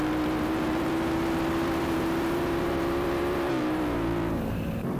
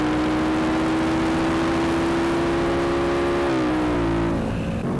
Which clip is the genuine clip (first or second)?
second